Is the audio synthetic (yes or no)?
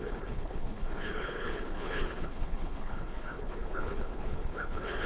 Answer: yes